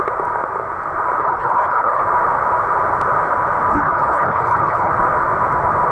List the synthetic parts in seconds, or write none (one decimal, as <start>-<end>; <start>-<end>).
1.2-2.0; 3.7-4.9